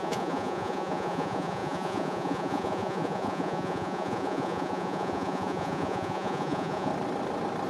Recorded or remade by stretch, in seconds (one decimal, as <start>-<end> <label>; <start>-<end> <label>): 0.0-6.9 remade; 6.9-7.7 recorded